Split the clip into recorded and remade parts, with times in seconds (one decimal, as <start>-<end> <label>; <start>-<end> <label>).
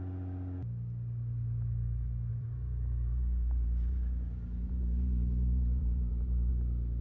0.0-2.3 recorded; 2.3-6.5 remade; 6.5-7.0 recorded